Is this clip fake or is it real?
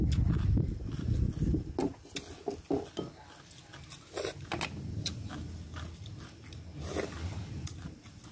real